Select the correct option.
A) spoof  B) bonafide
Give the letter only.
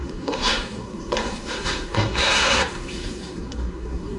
A